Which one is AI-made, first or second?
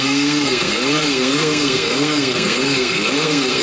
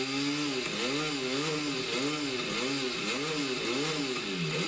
first